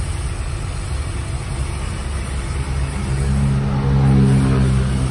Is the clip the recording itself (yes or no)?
yes